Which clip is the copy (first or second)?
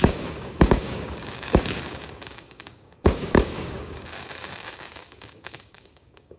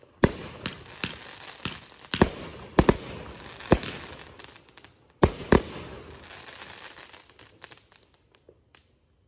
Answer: first